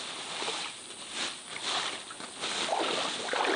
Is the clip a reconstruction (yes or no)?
no